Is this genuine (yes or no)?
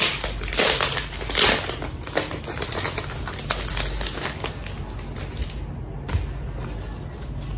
yes